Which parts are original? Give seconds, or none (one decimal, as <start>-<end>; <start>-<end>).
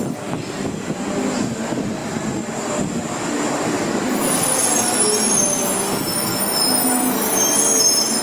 0.0-8.2